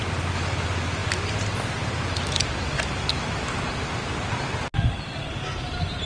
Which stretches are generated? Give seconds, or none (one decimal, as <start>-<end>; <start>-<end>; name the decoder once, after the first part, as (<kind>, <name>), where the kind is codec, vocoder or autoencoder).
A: none